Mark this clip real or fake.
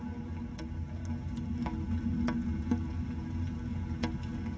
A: real